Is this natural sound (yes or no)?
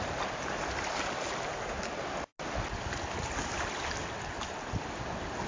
yes